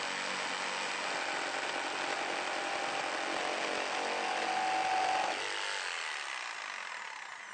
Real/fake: real